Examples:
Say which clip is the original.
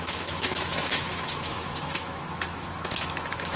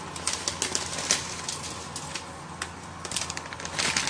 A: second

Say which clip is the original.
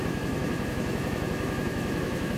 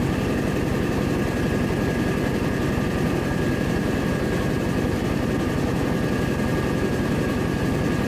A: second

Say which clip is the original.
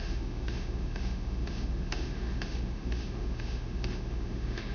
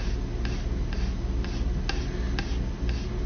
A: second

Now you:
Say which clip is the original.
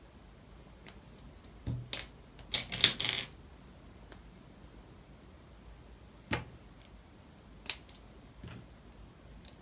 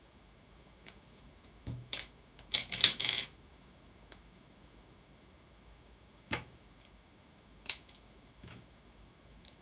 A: first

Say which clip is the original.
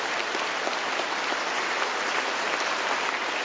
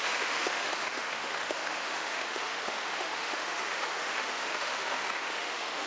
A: first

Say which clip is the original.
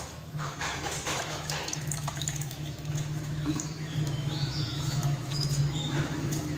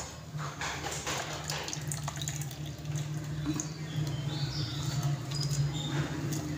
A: second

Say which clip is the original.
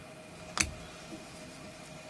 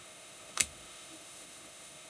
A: first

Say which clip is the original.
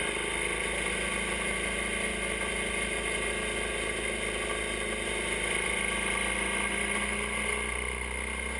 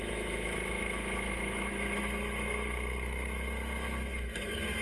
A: first